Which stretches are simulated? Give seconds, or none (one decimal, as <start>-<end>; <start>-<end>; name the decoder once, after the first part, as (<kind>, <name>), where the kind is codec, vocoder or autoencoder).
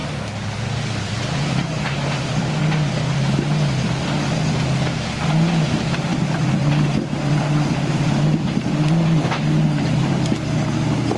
0.0-2.6 (vocoder, BigVGAN v2); 6.1-9.4